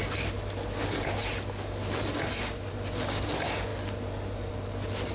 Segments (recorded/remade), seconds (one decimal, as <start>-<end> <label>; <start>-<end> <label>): 0.0-5.1 recorded